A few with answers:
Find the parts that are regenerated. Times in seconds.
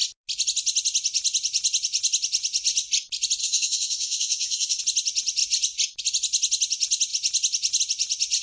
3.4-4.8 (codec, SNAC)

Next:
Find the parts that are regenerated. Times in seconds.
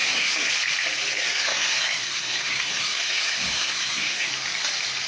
0.0-0.5 (codec, SNAC); 1.2-4.3